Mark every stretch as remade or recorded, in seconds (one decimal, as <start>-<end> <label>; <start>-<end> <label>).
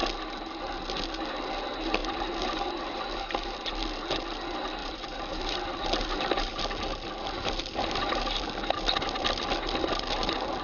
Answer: 0.0-2.0 recorded; 2.0-3.7 remade; 3.7-4.8 recorded; 4.8-6.6 remade; 6.6-10.6 recorded